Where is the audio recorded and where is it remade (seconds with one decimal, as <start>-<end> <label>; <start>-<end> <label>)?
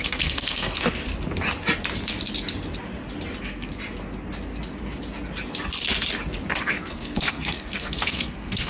0.0-1.0 remade; 1.0-3.4 recorded; 3.4-3.8 remade; 3.8-6.6 recorded; 6.6-8.7 remade